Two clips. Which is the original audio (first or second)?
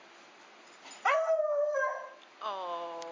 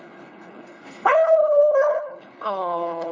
first